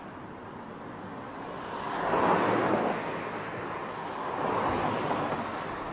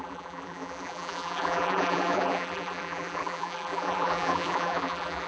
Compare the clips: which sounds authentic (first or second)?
first